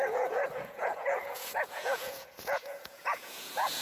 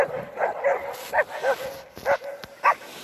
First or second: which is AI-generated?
first